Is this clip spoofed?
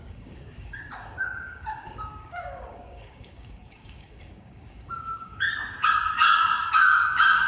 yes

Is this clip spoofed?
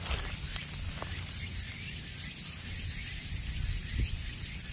no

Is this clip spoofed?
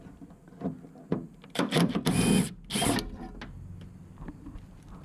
no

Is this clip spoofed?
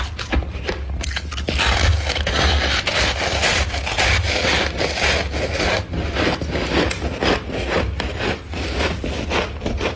no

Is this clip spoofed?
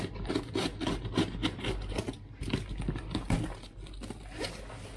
no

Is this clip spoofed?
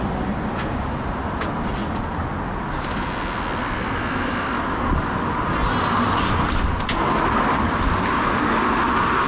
no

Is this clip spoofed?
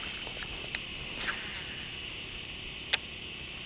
no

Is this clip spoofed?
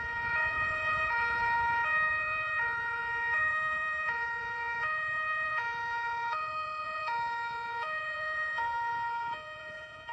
yes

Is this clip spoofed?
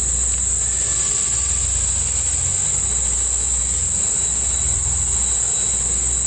no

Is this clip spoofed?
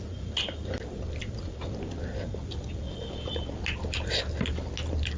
no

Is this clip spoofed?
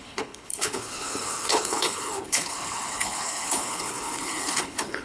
yes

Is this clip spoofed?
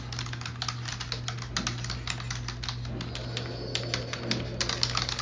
no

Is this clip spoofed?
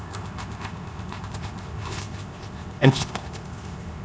yes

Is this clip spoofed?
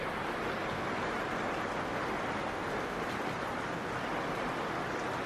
no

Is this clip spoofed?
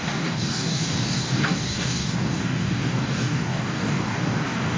yes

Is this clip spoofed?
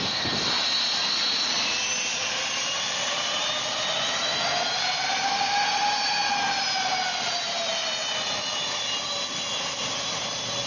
no